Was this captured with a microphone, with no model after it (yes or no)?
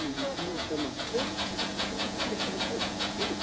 no